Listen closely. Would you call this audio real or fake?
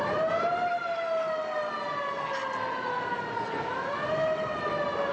real